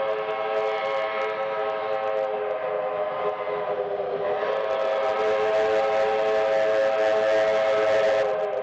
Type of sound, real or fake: real